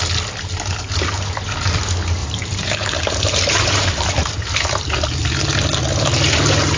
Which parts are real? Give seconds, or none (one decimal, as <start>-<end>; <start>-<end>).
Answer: 0.0-2.2; 4.5-6.8